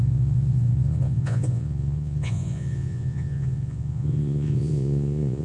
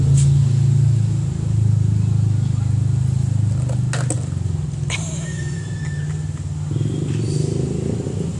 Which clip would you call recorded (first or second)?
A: second